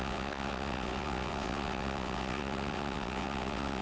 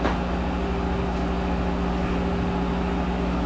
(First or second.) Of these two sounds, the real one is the second